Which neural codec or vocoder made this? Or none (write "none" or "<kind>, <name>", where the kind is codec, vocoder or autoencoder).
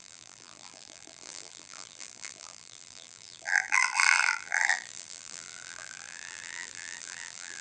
vocoder, BigVGAN v2